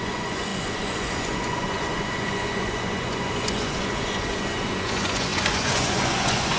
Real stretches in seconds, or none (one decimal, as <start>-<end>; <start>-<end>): none